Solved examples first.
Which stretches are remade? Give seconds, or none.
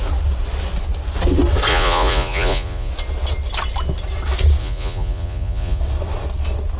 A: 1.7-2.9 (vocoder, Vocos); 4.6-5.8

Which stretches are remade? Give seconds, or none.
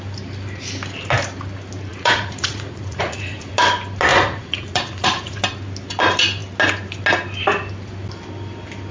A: 1.9-3.5 (vocoder, Vocos); 4.1-5.4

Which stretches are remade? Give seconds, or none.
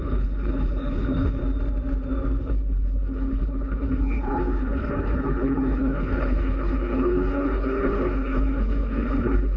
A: 0.0-1.4 (codec, HILCodec); 2.4-9.6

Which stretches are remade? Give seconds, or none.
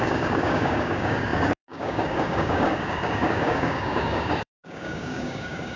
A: 0.0-5.8 (codec, DAC)